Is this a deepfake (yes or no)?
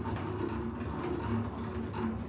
no